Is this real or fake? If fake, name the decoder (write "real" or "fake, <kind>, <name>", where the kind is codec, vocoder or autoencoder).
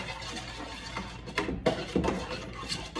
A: real